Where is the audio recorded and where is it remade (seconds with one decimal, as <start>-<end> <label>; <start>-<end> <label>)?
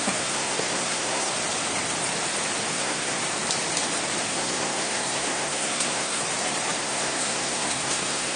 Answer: 0.0-1.3 remade; 1.3-2.7 recorded; 2.7-3.2 remade; 3.2-4.3 recorded; 4.3-6.2 remade; 6.2-6.8 recorded; 6.8-8.4 remade